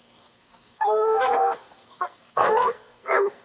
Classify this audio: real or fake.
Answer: fake